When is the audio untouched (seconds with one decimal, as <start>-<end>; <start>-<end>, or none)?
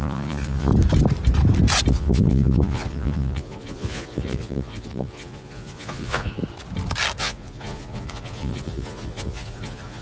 0.7-1.9; 6.4-7.2